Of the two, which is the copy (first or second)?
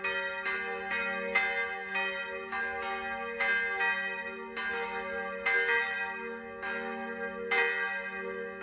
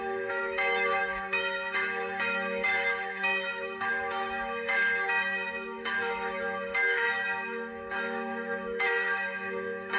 second